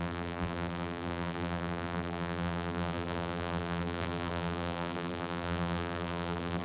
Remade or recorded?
remade